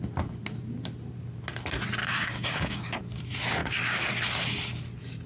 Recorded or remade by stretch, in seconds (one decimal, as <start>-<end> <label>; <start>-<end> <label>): 0.0-2.0 recorded; 2.0-3.0 remade; 3.0-3.6 recorded; 3.6-4.1 remade; 4.1-5.3 recorded